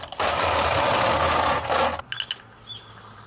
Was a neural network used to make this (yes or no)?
no